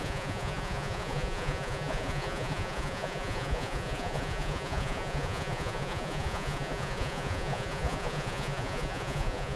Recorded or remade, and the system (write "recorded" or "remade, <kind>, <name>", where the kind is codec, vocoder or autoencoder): remade, vocoder, Vocos